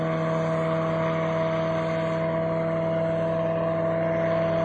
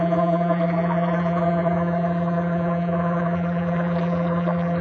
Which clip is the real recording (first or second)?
first